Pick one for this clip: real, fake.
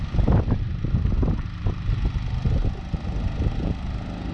real